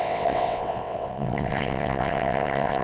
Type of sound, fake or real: fake